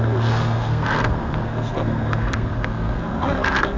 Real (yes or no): no